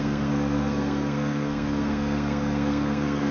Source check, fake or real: fake